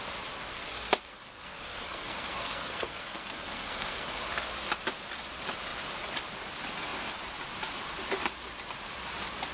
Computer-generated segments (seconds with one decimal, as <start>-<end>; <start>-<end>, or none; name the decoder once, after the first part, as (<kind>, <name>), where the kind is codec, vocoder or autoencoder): 0.5-4.2 (codec, SNAC)

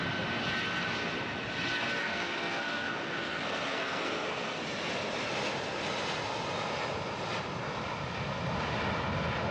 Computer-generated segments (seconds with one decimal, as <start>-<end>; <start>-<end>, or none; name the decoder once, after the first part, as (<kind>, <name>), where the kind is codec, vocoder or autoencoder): 2.0-4.6 (codec, SNAC)

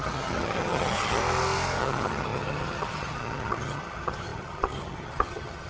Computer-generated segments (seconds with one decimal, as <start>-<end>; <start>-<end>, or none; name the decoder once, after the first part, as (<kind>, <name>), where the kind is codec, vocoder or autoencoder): 0.0-1.2 (vocoder, HiFi-GAN); 1.8-5.7

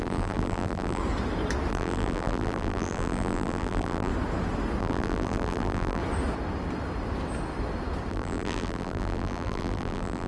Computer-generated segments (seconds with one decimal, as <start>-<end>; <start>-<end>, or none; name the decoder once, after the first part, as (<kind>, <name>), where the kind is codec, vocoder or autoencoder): 0.0-1.0 (vocoder, BigVGAN v2); 1.7-4.1; 4.8-6.0; 8.1-10.3

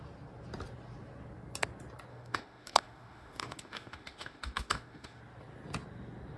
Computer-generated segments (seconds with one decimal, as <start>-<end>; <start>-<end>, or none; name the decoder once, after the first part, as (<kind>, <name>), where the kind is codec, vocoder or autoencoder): 2.1-5.2 (autoencoder, DAC-VAE)

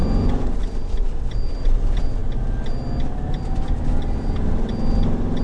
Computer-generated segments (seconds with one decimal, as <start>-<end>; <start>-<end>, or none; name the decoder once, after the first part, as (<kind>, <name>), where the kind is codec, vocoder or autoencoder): none

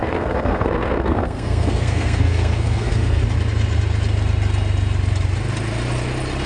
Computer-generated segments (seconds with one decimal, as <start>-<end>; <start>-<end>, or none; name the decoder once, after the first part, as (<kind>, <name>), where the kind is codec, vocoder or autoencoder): 0.0-3.2 (codec, SNAC)